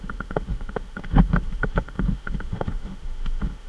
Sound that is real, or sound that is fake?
fake